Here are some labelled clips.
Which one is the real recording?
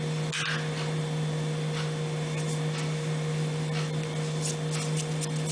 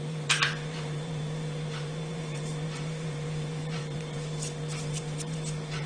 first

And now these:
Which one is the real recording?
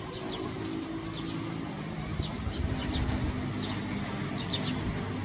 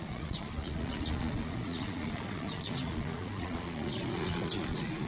first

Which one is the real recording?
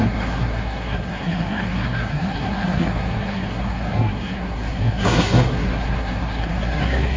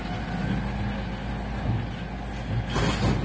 second